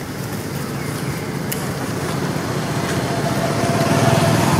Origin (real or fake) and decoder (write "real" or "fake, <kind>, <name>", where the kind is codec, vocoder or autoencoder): real